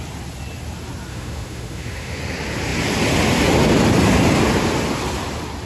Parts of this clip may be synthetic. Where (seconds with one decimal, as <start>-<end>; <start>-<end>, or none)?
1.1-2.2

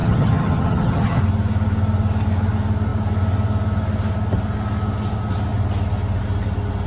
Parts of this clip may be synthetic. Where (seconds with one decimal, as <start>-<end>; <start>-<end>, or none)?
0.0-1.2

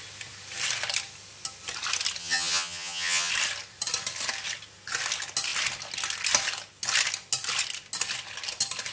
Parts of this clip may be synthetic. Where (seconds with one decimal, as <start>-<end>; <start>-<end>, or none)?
2.2-3.3

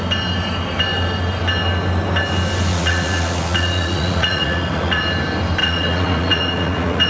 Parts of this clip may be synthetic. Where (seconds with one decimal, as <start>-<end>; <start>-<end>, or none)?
2.7-5.0; 5.6-7.1

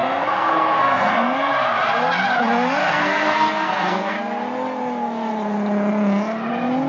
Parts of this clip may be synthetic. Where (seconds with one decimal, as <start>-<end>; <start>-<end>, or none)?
0.0-1.5; 2.8-4.2

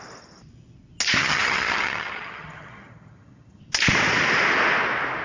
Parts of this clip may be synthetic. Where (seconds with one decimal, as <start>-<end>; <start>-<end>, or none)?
1.2-3.6